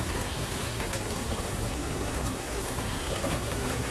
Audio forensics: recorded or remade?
remade